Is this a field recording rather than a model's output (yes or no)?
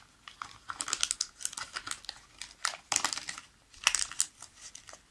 yes